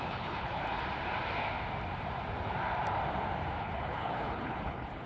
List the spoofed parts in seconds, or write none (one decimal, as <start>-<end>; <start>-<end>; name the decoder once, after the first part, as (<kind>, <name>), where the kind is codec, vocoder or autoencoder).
0.0-0.6 (codec, HILCodec); 3.6-5.1